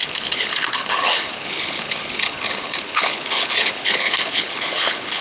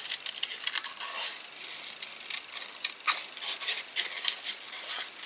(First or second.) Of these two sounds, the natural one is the second